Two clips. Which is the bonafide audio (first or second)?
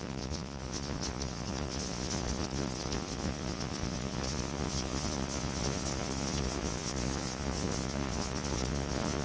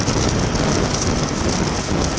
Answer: second